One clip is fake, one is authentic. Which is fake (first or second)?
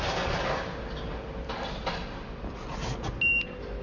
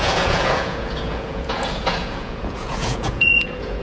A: second